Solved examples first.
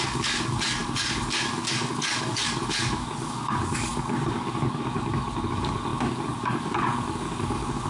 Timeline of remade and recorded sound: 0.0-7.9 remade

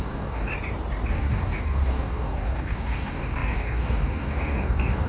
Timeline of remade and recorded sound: 0.0-0.5 remade; 0.5-1.1 recorded; 1.1-5.1 remade